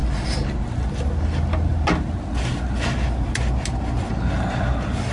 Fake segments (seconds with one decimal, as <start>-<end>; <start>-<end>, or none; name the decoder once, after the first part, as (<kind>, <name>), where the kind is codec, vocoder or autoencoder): none